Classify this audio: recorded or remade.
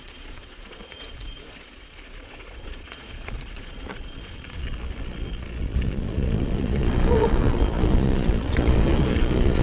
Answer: remade